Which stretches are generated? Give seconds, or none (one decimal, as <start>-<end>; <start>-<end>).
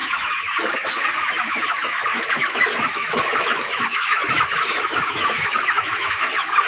0.0-6.7